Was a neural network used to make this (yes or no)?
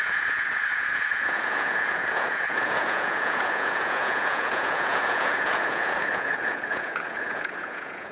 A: yes